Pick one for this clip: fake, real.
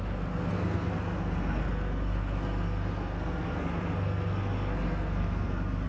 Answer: fake